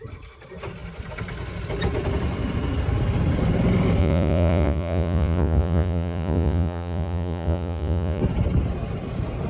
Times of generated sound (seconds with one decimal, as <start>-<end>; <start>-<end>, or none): 4.0-8.2